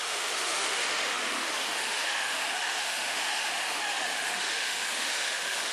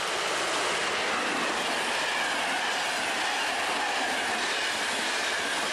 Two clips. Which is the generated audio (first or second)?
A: first